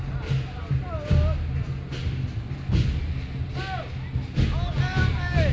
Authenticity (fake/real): real